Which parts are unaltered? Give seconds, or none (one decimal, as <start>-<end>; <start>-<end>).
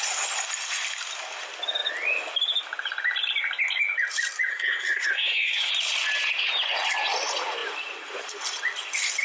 0.0-4.5; 5.7-9.2